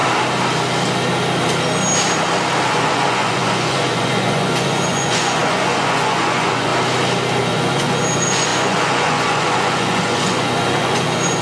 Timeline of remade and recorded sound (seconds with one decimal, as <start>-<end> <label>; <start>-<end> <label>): 0.0-2.7 recorded; 2.7-6.7 remade; 6.7-7.4 recorded; 7.4-11.4 remade